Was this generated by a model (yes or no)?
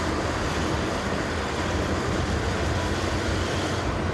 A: no